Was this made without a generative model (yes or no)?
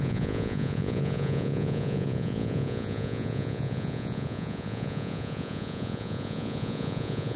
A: no